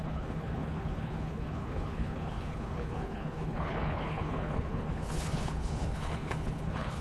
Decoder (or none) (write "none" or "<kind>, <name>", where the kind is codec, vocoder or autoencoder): codec, HILCodec